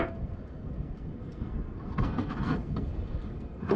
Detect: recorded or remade remade